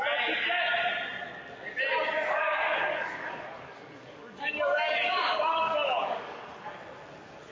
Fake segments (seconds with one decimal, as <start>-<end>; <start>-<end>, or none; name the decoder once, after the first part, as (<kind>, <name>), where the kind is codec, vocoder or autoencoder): 2.2-6.7 (codec, DAC)